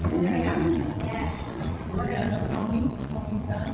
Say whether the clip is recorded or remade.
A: remade